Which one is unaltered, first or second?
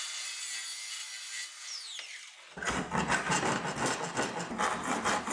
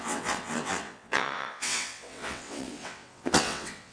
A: first